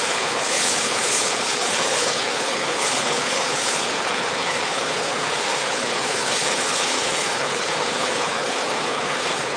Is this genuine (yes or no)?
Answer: no